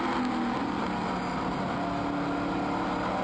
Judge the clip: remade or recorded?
recorded